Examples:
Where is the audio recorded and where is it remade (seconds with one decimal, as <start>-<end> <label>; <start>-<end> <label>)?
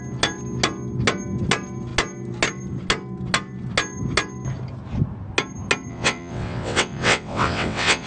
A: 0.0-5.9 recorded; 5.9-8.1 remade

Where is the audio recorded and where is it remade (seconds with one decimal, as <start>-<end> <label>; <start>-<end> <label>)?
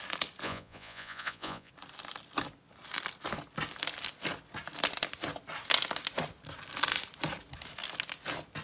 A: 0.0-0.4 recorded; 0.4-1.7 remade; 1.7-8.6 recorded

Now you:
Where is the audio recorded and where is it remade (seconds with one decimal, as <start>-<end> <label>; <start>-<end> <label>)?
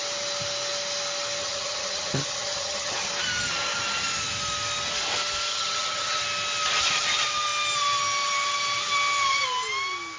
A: 0.0-1.4 recorded; 1.4-3.1 remade; 3.1-5.5 recorded; 5.5-6.2 remade; 6.2-10.2 recorded